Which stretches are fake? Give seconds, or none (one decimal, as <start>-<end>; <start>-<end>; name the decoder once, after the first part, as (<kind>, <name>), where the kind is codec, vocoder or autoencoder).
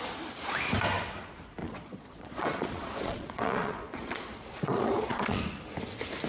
1.6-5.4 (vocoder, Vocos)